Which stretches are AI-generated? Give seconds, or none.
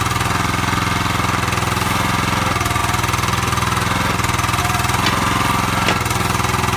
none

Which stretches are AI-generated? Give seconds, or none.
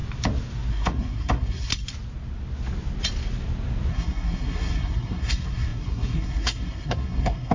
0.7-1.7 (codec, SNAC); 3.9-7.5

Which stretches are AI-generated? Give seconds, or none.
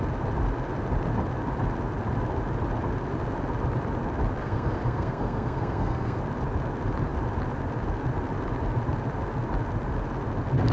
4.4-6.2 (codec, SNAC)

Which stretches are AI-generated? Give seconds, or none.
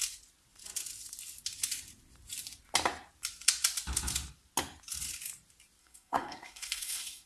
5.8-7.3 (codec, SNAC)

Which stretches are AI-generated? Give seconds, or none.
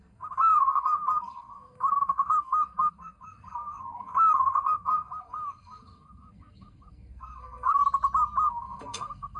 0.0-7.8 (codec, SNAC); 8.5-9.4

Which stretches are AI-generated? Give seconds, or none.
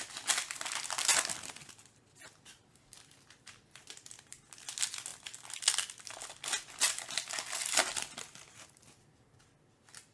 none